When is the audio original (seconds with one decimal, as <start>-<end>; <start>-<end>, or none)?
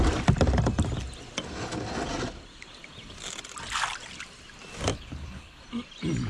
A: 0.0-4.9; 5.6-6.3